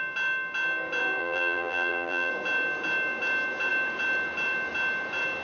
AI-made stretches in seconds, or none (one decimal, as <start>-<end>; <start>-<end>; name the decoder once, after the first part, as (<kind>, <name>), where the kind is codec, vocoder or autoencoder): 1.2-2.3 (vocoder, BigVGAN v2)